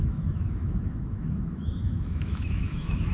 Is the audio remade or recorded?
remade